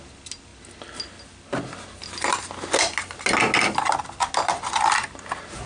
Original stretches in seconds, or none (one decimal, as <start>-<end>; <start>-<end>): 0.0-5.7